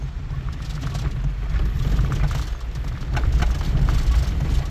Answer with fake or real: real